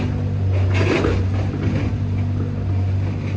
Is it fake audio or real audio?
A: real